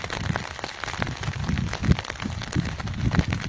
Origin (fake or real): real